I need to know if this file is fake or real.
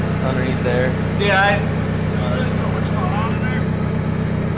real